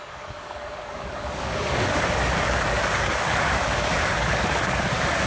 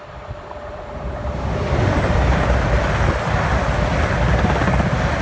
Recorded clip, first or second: second